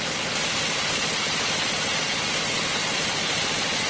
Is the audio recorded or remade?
recorded